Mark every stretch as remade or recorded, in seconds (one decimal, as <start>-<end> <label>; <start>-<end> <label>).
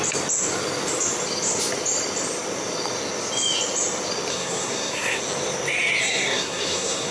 0.0-4.3 recorded; 4.3-5.2 remade; 5.2-6.0 recorded; 6.0-7.1 remade